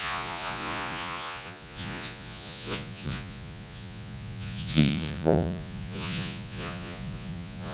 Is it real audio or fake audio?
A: fake